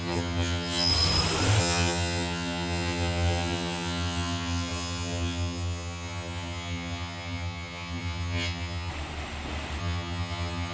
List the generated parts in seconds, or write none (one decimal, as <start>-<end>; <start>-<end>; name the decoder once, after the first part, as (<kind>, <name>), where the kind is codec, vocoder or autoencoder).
0.0-0.9 (vocoder, HiFi-GAN); 1.6-8.9; 9.8-10.7